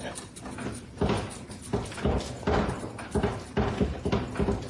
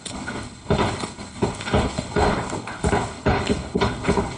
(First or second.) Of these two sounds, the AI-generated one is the second